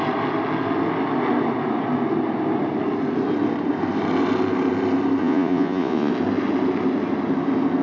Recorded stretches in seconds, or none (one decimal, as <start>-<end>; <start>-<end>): 0.0-5.2; 6.1-7.8